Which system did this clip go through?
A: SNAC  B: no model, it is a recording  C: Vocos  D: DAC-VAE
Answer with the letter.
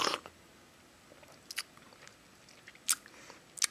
B